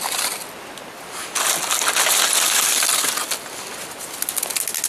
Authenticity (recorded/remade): recorded